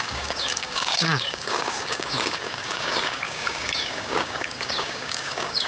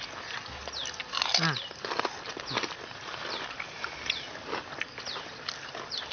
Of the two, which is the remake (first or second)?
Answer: first